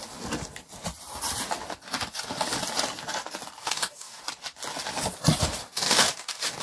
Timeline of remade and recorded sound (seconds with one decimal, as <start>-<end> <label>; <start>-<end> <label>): 0.0-3.6 recorded; 3.6-4.2 remade; 4.2-5.6 recorded; 5.6-6.6 remade

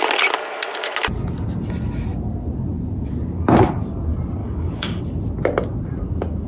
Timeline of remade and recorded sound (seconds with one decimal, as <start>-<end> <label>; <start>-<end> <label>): 0.0-4.4 recorded; 4.4-5.0 remade; 5.0-6.5 recorded